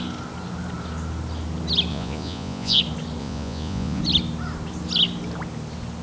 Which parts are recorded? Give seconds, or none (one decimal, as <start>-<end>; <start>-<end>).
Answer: 0.0-1.9; 2.8-3.2; 4.0-6.0

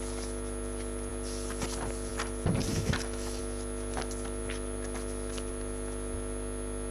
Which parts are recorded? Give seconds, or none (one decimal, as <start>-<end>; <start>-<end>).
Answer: 0.0-2.7; 3.4-6.9